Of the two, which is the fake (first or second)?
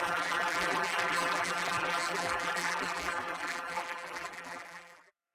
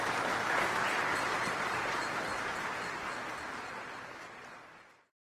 first